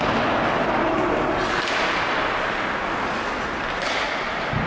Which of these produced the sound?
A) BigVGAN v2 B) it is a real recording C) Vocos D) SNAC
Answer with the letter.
B